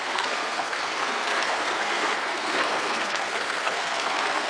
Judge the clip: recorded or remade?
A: remade